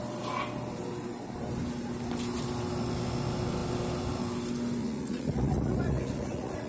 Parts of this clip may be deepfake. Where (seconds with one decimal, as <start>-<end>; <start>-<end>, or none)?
4.8-6.7